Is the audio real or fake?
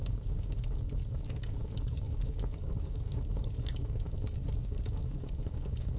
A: fake